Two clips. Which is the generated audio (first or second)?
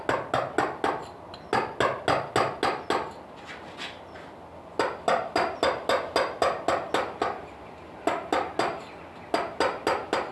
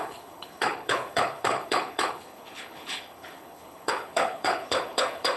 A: second